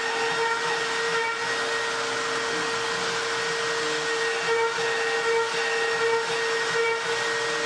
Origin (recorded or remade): recorded